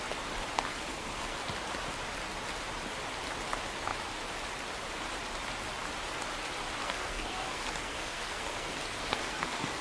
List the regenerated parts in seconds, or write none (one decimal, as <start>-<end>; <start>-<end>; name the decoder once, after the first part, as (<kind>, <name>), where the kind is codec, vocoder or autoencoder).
0.7-1.4 (codec, SNAC); 6.8-9.8